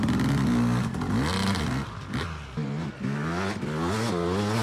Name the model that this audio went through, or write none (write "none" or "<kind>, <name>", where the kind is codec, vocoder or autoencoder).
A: none